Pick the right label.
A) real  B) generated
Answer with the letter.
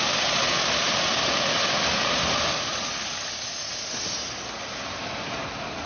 A